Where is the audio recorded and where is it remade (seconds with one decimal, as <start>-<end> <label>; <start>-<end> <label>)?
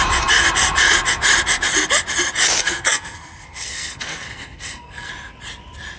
0.0-2.6 recorded; 2.6-5.1 remade; 5.1-6.0 recorded